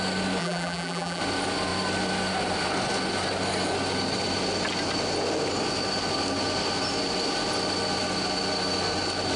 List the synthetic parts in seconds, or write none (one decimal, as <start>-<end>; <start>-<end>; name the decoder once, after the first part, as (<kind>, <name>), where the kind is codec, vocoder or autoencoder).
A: 0.4-1.2 (vocoder, BigVGAN v2)